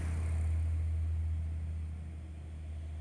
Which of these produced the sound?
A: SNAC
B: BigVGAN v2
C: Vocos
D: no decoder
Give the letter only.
D